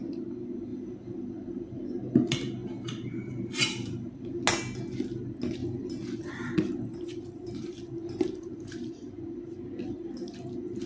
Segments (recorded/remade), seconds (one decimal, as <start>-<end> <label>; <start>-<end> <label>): 0.0-0.7 recorded; 0.7-1.8 remade; 1.8-2.6 recorded; 2.6-4.4 remade; 4.4-5.6 recorded; 5.6-9.1 remade; 9.1-10.9 recorded